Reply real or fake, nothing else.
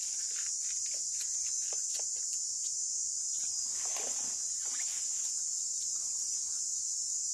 real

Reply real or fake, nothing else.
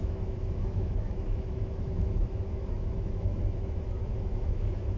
fake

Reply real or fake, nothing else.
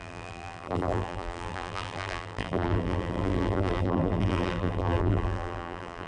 fake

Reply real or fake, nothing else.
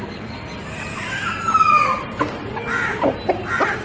real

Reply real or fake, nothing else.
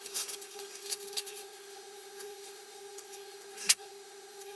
fake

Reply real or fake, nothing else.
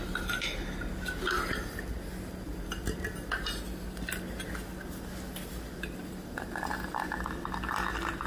real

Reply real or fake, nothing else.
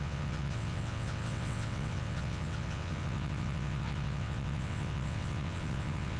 fake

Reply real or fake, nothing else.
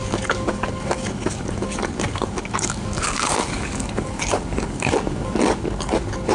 fake